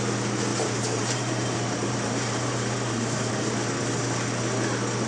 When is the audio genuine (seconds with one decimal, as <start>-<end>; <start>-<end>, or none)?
0.0-0.5; 3.3-5.1